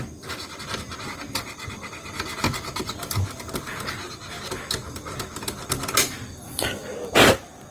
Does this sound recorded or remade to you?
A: recorded